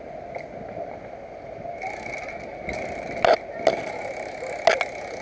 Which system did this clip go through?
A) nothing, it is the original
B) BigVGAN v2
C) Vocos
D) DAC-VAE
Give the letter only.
A